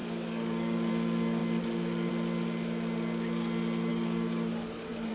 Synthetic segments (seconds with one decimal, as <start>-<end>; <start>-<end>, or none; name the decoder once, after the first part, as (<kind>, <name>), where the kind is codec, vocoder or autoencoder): 0.0-0.9 (codec, DAC); 3.9-5.1